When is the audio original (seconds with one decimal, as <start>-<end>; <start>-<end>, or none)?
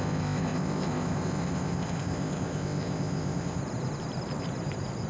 3.6-5.1